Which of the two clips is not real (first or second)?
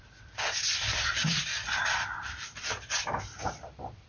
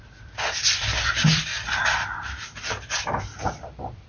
first